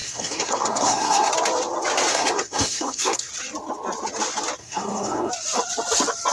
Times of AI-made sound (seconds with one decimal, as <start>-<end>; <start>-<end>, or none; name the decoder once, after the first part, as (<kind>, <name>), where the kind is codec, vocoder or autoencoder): 0.0-1.3 (codec, SNAC); 2.1-3.3; 4.6-5.3